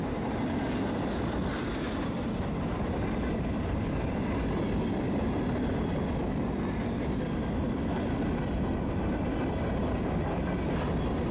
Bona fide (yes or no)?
yes